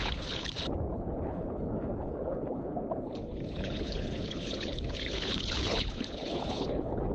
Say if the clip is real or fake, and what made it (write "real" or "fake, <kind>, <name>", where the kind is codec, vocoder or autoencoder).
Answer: fake, codec, HILCodec